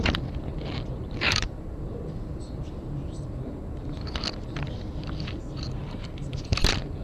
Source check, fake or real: fake